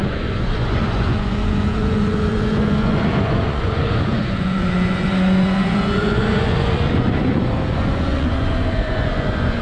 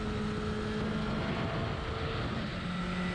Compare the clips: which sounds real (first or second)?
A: second